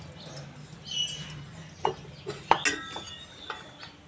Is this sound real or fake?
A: real